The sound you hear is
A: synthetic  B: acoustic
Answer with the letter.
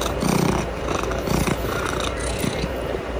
A